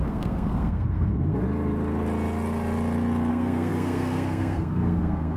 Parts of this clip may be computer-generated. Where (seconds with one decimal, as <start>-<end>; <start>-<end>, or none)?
0.0-1.4; 3.3-5.4